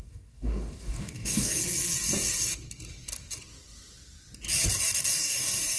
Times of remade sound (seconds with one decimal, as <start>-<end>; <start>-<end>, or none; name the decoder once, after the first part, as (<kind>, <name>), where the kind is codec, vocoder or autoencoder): 0.0-1.6 (codec, DAC); 5.1-5.8